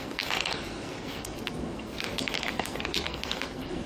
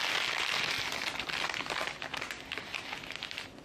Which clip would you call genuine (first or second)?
second